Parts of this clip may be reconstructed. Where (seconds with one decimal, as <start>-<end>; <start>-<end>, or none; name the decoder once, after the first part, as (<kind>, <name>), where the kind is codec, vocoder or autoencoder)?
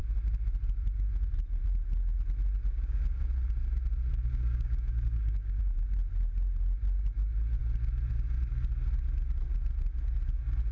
2.7-3.2 (codec, DAC); 4.1-5.6